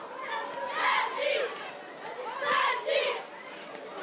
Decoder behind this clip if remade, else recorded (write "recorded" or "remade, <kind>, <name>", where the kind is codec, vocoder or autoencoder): recorded